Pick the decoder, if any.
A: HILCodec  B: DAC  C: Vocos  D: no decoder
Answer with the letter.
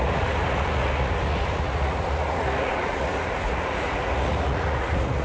C